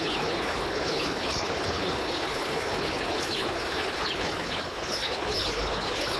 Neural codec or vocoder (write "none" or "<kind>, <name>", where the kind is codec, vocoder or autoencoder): codec, HILCodec